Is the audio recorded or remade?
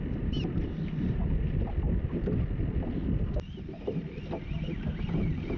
recorded